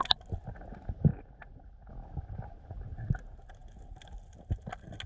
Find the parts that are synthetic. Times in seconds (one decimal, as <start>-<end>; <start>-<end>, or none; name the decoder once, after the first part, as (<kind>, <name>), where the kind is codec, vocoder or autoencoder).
none